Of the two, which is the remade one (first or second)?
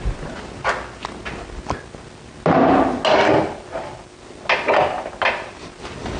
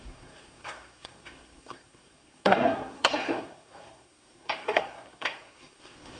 second